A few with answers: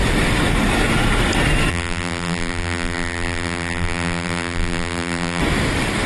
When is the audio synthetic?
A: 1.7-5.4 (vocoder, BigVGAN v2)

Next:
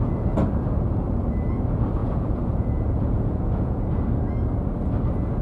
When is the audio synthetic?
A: 2.0-4.0 (vocoder, Vocos)

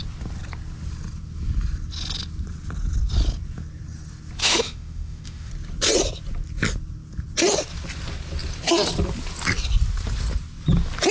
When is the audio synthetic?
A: 4.4-5.5 (autoencoder, DAC-VAE)

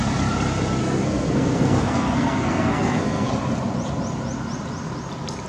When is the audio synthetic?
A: 0.8-3.3 (codec, SNAC)

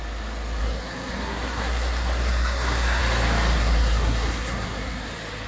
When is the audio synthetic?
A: 0.6-3.0 (codec, SNAC); 3.5-5.1

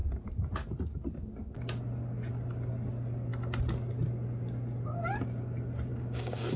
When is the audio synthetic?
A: 5.9-6.6 (codec, DAC)

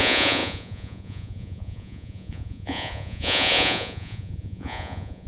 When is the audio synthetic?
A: 0.0-5.3 (vocoder, Vocos)

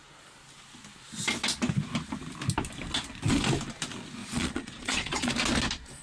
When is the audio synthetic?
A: 4.2-5.3 (vocoder, Vocos)